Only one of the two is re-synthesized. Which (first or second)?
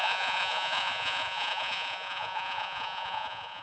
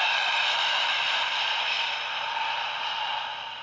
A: first